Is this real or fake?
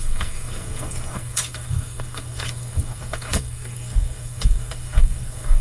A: fake